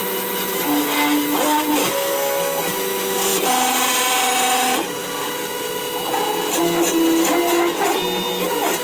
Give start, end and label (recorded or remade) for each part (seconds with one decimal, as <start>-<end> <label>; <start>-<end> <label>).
0.0-1.8 recorded; 1.8-2.7 remade; 2.7-8.8 recorded